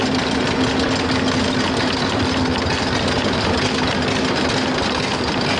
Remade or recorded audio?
recorded